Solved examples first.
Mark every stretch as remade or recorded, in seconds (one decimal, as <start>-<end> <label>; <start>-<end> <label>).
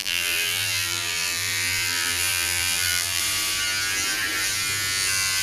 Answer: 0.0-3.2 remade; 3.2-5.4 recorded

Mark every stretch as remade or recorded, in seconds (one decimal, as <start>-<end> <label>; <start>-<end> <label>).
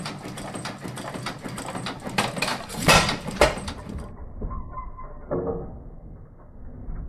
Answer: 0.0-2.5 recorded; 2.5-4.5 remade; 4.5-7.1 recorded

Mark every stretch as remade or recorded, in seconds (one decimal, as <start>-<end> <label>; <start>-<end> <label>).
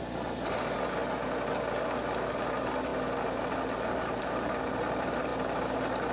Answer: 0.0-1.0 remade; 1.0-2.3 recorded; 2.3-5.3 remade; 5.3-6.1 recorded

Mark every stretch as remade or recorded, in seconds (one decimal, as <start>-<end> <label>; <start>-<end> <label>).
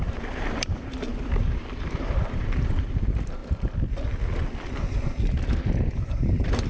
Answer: 0.0-3.4 remade; 3.4-6.0 recorded; 6.0-6.7 remade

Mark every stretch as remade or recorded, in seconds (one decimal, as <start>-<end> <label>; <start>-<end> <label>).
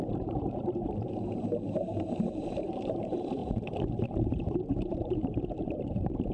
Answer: 0.0-3.4 remade; 3.4-3.9 recorded; 3.9-6.3 remade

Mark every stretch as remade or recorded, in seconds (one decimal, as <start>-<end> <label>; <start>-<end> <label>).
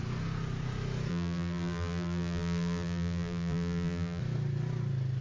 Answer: 0.0-1.1 recorded; 1.1-4.2 remade; 4.2-5.2 recorded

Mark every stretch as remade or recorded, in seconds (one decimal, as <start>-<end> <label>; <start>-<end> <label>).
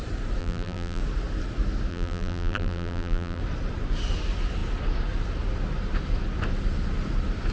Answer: 0.0-0.4 recorded; 0.4-1.0 remade; 1.0-1.9 recorded; 1.9-3.4 remade; 3.4-7.5 recorded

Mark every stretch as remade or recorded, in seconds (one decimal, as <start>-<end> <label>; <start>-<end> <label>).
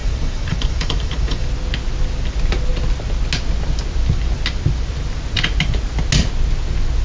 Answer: 0.0-1.5 remade; 1.5-7.0 recorded